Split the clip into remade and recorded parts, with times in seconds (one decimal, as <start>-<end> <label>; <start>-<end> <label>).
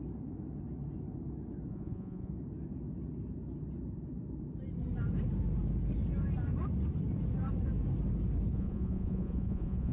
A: 0.0-1.7 recorded; 1.7-2.3 remade; 2.3-8.5 recorded; 8.5-9.9 remade